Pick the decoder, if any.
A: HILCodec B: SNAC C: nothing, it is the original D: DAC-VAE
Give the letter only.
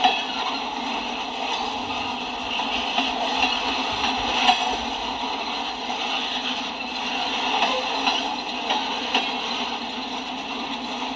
C